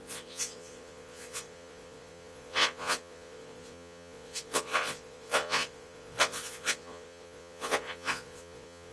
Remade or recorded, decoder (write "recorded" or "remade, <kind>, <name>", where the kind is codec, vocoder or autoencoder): remade, vocoder, Vocos